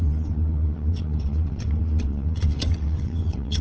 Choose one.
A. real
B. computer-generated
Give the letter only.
B